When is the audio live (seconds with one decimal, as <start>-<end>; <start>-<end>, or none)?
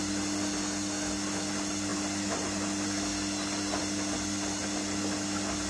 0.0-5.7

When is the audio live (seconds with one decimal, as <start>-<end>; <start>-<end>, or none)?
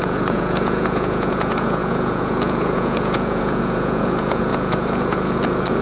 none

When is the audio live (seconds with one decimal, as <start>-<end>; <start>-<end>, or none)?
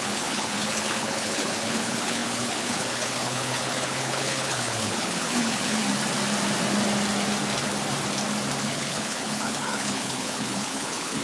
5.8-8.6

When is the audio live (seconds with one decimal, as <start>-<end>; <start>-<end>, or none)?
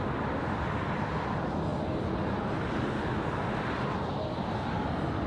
0.0-5.3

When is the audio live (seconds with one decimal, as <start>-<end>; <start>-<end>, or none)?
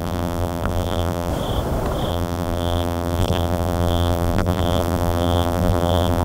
1.3-2.1